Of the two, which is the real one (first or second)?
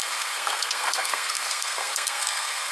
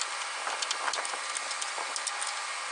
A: second